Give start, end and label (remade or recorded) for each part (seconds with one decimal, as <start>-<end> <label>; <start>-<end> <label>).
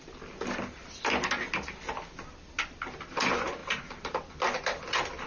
0.0-3.6 recorded; 3.6-4.3 remade; 4.3-5.3 recorded